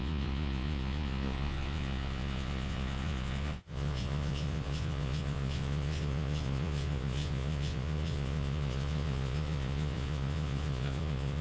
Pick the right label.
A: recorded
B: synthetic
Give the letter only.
B